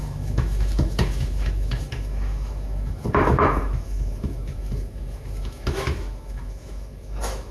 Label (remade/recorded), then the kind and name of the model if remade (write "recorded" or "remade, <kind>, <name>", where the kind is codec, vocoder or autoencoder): remade, autoencoder, DAC-VAE